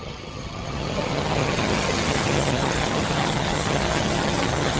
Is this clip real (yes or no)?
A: no